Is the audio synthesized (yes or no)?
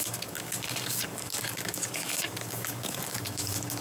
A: yes